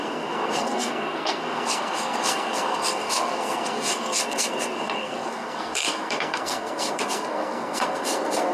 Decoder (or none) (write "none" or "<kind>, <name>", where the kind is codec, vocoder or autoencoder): codec, SNAC